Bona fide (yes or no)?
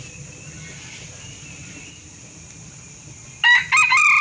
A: yes